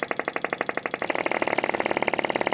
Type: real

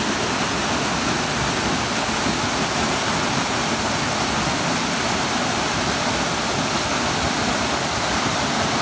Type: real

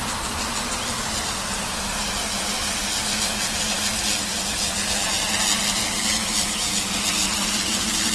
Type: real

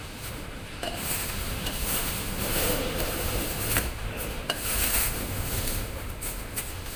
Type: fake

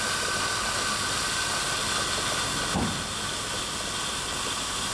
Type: real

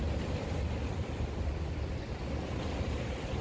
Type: real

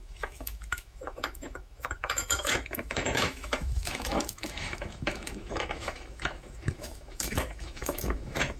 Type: fake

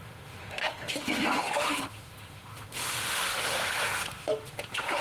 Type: fake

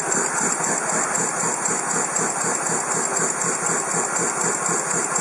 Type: real